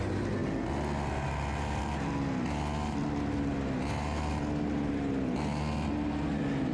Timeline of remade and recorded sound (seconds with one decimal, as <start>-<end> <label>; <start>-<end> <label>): 0.0-6.7 recorded